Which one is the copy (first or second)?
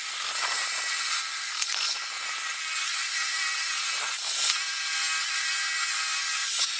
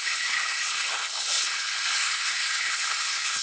second